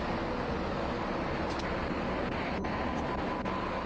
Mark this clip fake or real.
real